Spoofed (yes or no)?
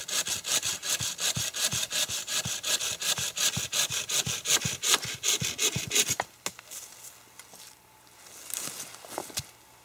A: no